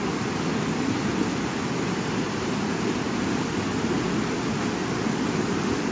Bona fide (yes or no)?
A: yes